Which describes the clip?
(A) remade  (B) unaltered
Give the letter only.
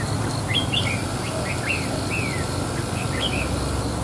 B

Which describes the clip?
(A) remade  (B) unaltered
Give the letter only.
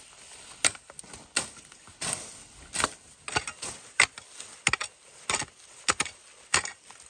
B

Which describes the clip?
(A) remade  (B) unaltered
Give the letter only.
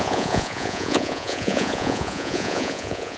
A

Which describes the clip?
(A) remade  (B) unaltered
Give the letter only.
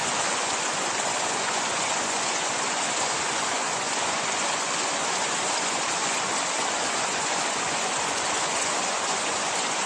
A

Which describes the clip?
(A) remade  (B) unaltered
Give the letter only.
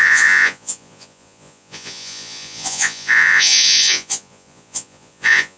A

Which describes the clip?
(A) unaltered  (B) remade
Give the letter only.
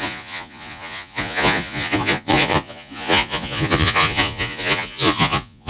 B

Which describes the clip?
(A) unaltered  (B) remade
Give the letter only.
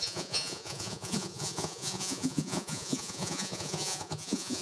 B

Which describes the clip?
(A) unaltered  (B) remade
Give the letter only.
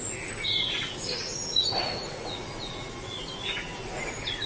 B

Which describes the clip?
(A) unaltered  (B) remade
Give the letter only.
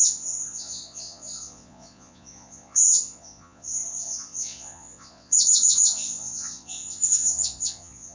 B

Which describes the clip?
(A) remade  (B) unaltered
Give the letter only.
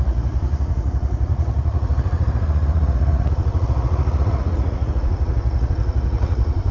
A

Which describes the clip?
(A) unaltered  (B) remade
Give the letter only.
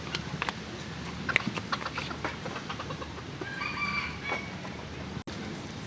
A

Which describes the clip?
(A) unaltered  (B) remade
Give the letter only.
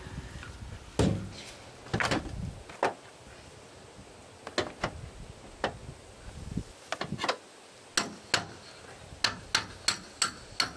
A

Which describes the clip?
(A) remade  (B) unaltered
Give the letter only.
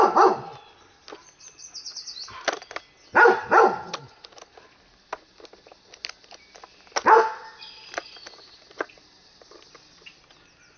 B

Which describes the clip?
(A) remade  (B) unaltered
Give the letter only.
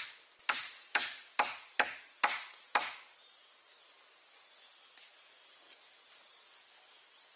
B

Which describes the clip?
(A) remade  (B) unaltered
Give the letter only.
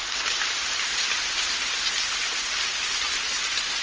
B